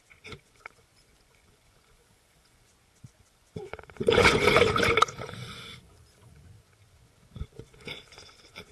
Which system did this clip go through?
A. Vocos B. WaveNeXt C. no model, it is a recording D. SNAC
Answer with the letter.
A